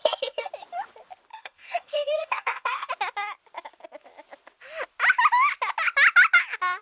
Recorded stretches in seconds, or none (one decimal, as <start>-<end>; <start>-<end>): 0.5-1.3; 2.9-6.8